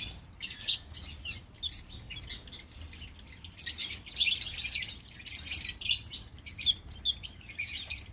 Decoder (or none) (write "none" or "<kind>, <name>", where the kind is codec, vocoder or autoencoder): none